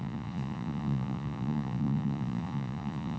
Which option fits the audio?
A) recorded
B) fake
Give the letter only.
B